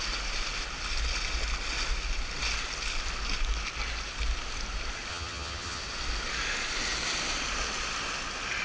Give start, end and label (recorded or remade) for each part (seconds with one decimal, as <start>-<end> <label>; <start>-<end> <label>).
0.0-5.1 recorded; 5.1-5.8 remade; 5.8-8.6 recorded

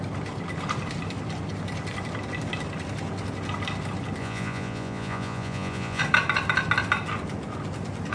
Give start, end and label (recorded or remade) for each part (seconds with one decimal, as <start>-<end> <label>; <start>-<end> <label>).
0.0-4.2 recorded; 4.2-6.0 remade; 6.0-8.1 recorded